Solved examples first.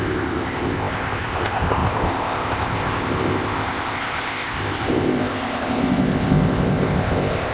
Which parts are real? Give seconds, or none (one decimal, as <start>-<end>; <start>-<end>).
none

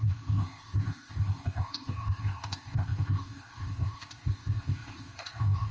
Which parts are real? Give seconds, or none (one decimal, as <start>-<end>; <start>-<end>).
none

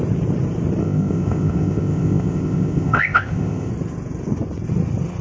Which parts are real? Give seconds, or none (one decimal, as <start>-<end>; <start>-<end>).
0.0-0.8; 3.7-5.2

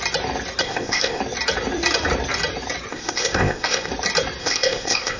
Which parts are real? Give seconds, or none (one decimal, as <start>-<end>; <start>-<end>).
0.0-0.6; 1.2-2.9; 3.9-4.4